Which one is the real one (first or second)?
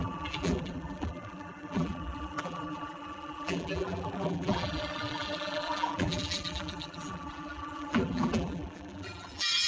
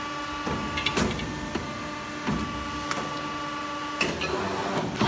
second